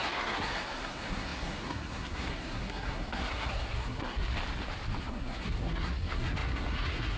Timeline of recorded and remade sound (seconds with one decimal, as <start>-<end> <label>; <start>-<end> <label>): 0.0-4.3 remade; 4.3-5.0 recorded; 5.0-7.2 remade